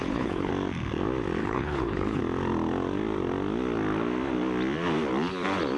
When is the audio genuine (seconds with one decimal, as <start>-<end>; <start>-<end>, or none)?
0.5-1.4; 2.2-5.8